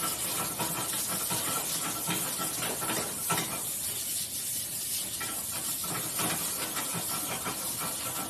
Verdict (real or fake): real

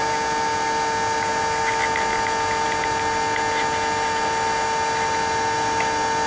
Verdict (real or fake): real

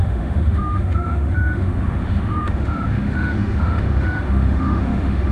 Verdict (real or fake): fake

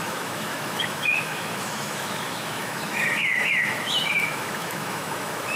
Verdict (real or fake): fake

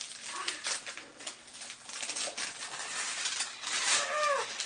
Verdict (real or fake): real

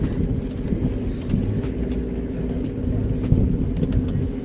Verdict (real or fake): real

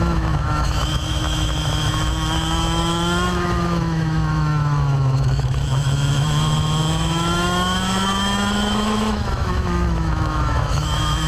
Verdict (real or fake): fake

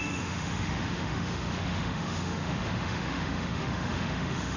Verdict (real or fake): fake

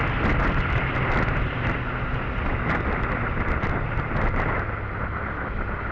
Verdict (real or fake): real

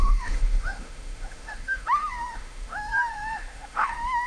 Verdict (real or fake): fake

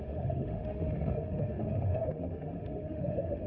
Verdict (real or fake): fake